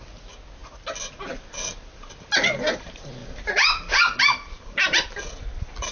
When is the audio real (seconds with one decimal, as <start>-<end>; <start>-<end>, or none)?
0.0-5.9